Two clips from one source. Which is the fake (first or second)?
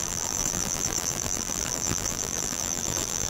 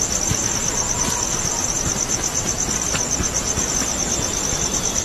first